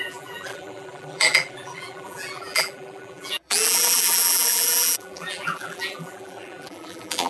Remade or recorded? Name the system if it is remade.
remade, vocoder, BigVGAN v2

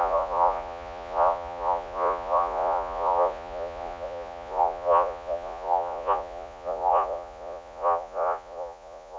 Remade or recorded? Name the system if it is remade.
remade, vocoder, Vocos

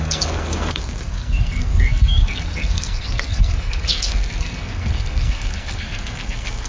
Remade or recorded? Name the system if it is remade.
remade, codec, SNAC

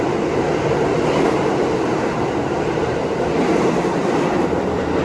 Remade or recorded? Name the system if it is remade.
recorded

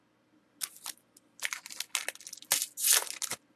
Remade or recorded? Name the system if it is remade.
recorded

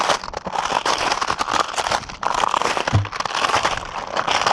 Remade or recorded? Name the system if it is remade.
recorded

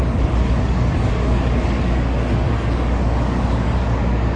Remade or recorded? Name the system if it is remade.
remade, codec, DAC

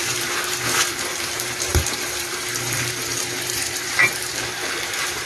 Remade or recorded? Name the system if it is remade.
remade, vocoder, BigVGAN v2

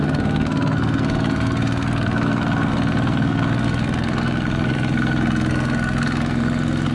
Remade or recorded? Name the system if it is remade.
remade, codec, SNAC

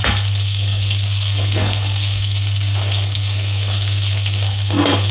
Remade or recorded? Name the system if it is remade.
remade, codec, SNAC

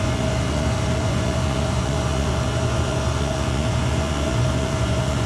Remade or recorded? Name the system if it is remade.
remade, vocoder, Vocos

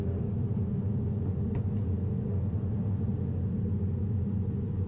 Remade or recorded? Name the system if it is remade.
recorded